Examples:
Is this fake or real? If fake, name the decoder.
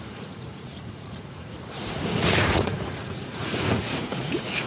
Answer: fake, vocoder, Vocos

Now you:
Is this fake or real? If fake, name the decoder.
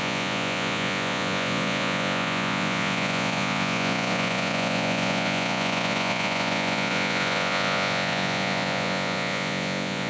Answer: fake, vocoder, Vocos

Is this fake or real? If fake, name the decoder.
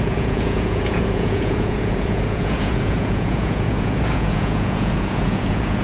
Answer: fake, vocoder, Vocos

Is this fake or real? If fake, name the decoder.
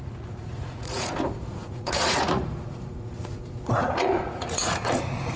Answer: fake, vocoder, Vocos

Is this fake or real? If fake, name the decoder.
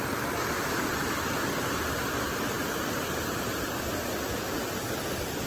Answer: real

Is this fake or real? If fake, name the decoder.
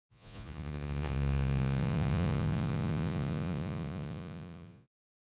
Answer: fake, vocoder, Vocos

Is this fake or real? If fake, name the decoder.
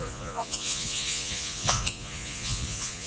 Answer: fake, vocoder, Vocos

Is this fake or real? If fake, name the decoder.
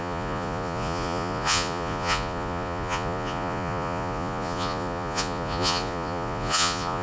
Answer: fake, vocoder, Vocos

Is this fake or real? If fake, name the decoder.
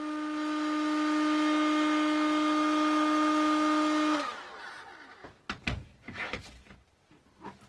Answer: real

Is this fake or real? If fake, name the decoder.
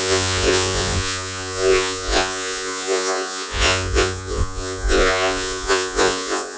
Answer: fake, vocoder, Vocos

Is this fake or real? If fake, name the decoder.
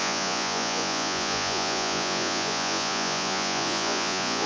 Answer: fake, vocoder, Vocos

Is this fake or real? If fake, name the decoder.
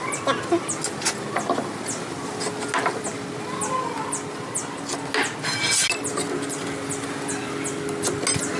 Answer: real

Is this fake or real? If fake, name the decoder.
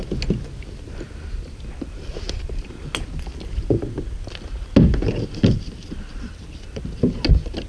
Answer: real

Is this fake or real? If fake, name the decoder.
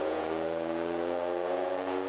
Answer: fake, vocoder, Vocos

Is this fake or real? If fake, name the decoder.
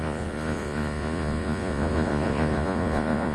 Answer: fake, vocoder, Vocos